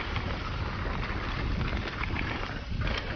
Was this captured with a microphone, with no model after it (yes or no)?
yes